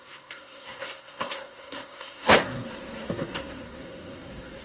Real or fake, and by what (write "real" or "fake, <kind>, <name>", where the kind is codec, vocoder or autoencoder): fake, codec, SNAC